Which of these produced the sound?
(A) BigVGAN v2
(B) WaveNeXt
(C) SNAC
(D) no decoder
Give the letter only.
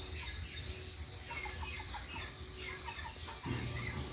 D